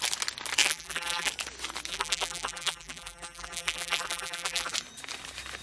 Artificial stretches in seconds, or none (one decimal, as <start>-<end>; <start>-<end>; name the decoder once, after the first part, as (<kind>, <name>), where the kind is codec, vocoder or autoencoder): 0.6-1.3 (vocoder, BigVGAN v2); 1.9-4.7